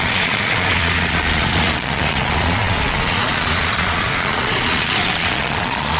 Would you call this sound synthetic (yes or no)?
yes